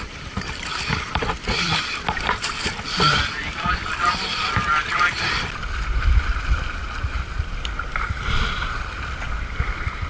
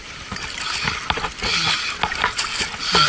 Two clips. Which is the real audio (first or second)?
second